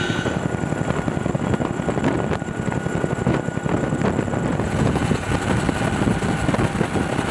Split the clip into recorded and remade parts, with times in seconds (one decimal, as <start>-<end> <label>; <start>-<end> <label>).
0.0-4.5 recorded; 4.5-5.3 remade; 5.3-7.3 recorded